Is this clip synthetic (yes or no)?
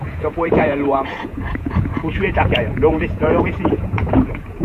yes